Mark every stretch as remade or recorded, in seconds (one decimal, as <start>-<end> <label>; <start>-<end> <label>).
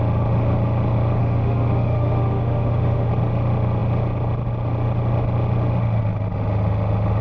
0.0-1.2 recorded; 1.2-3.1 remade; 3.1-7.2 recorded